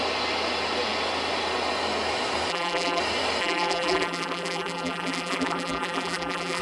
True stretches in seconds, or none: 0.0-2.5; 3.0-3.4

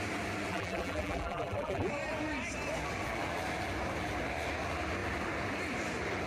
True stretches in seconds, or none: 0.0-0.5; 1.9-6.3

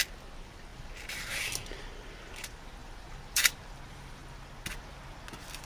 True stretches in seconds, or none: 0.0-2.8; 3.4-5.7

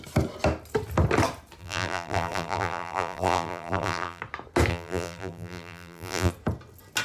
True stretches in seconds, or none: 0.0-1.6; 4.2-4.7; 6.3-7.0

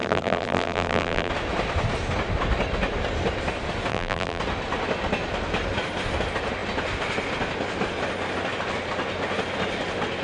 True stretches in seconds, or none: 1.3-3.9; 4.4-10.2

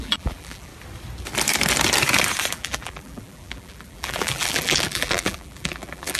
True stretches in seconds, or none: 0.7-2.5

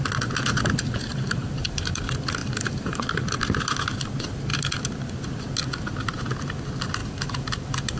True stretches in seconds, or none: 0.0-1.1; 2.0-2.4; 3.0-7.0